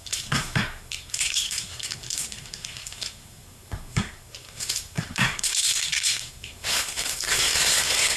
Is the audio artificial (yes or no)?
yes